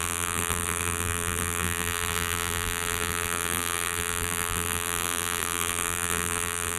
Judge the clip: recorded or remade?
remade